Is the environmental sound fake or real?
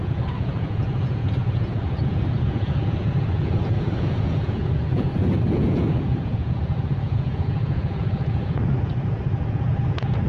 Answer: fake